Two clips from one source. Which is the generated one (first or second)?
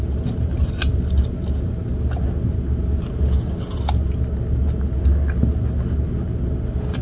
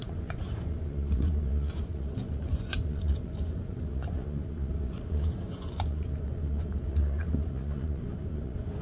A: second